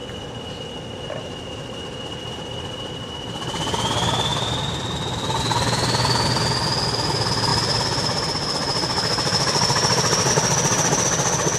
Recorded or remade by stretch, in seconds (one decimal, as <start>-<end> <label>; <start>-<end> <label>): 0.0-4.3 recorded; 4.3-5.4 remade; 5.4-7.5 recorded; 7.5-10.3 remade; 10.3-11.6 recorded